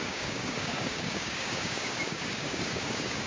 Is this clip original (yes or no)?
no